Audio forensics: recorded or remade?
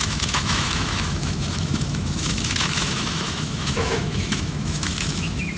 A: remade